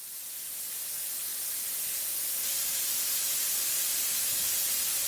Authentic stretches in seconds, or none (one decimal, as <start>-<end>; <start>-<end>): 1.3-2.6